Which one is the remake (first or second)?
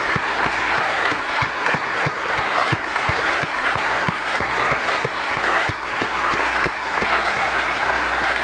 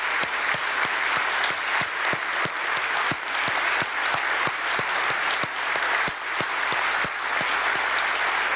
first